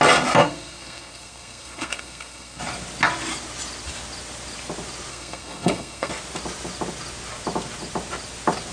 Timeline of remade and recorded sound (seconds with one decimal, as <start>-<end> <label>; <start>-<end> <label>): 0.0-0.4 recorded; 0.4-2.6 remade; 2.6-5.1 recorded; 5.1-6.1 remade; 6.1-8.7 recorded